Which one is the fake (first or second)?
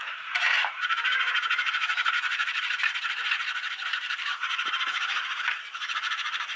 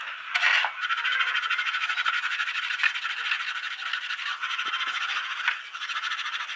first